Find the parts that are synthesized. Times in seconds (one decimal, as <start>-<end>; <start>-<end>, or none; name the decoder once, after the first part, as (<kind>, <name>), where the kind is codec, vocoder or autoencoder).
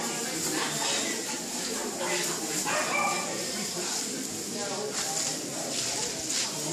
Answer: none